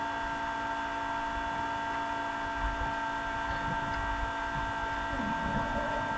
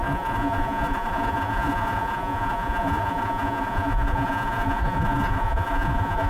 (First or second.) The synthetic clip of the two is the second